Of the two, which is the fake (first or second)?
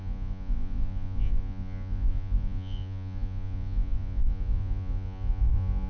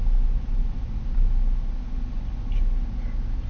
first